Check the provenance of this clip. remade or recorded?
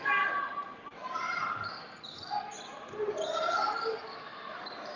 recorded